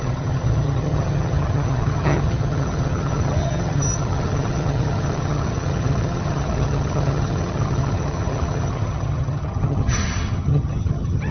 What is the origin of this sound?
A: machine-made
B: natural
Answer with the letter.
A